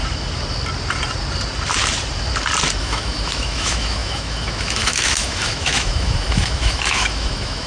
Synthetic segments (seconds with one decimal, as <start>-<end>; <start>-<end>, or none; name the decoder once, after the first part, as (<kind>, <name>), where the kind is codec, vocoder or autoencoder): 2.8-7.7 (autoencoder, DAC-VAE)